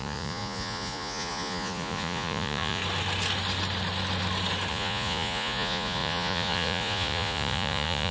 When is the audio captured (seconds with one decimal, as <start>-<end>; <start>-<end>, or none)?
2.8-4.7